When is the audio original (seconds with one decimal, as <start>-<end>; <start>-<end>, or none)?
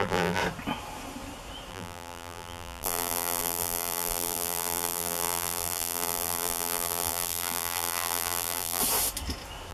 0.4-1.7; 8.8-9.7